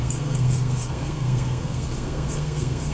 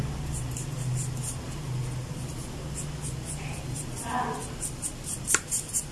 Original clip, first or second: second